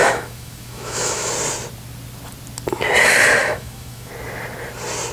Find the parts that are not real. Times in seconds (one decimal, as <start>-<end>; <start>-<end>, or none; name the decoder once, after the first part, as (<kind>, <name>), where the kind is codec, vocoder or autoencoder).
0.0-1.3 (autoencoder, DAC-VAE); 3.4-4.1